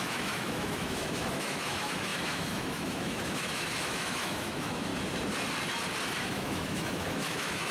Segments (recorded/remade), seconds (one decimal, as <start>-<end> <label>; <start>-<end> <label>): 0.0-4.9 remade; 4.9-6.2 recorded; 6.2-7.7 remade